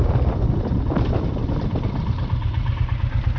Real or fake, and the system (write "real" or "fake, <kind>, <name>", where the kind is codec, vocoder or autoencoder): real